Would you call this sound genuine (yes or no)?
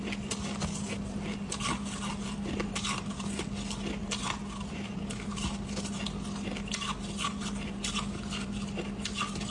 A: yes